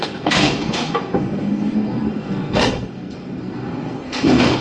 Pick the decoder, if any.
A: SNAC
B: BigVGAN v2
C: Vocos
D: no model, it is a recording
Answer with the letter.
A